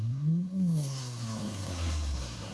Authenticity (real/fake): fake